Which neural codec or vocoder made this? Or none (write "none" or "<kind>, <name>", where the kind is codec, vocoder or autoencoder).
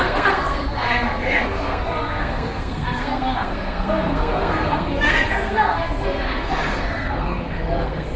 codec, SNAC